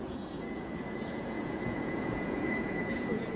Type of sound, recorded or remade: remade